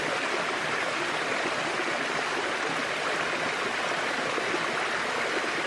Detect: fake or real real